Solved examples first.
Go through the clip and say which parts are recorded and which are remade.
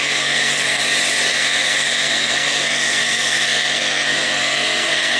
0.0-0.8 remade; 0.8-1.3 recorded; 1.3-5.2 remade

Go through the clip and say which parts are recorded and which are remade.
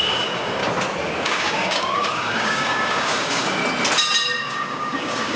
0.0-0.6 remade; 0.6-1.2 recorded; 1.2-3.6 remade; 3.6-4.4 recorded; 4.4-5.4 remade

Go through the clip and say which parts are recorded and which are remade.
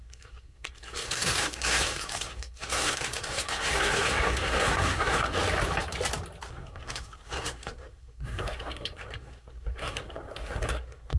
0.0-5.4 remade; 5.4-6.5 recorded; 6.5-11.2 remade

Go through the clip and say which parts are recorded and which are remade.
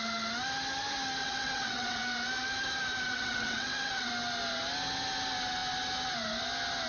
0.0-1.2 recorded; 1.2-2.0 remade; 2.0-3.1 recorded; 3.1-4.1 remade; 4.1-6.9 recorded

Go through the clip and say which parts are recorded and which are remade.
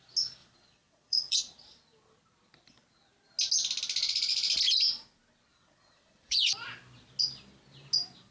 0.0-0.4 recorded; 0.4-1.4 remade; 1.4-5.5 recorded; 5.5-6.5 remade; 6.5-8.3 recorded